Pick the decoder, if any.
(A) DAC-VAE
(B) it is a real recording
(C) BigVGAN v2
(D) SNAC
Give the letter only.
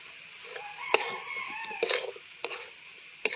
B